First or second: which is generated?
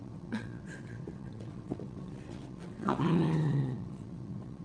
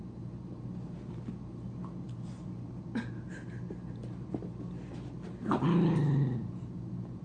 first